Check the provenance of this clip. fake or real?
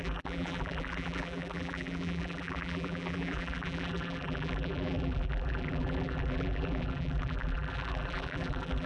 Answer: fake